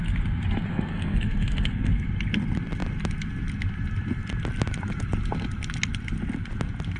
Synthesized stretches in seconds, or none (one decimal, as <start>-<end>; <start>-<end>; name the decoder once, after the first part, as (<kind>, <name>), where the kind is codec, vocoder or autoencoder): 0.7-1.9 (codec, SNAC)